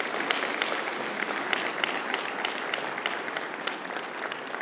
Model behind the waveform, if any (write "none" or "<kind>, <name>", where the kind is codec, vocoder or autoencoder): none